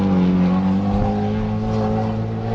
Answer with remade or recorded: recorded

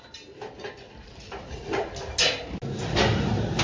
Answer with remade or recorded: recorded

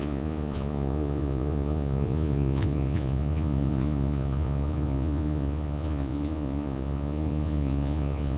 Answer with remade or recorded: remade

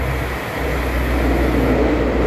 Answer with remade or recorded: recorded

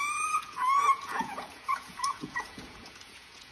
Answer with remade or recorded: remade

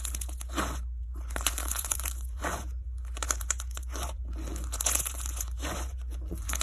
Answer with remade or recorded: remade